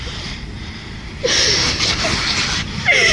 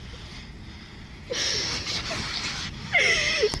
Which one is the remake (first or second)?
first